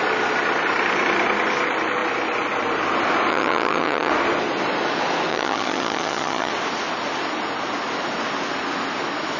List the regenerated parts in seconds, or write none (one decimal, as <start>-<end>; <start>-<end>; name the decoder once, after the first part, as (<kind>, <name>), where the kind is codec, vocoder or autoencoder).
3.3-4.1 (vocoder, HiFi-GAN); 5.3-6.5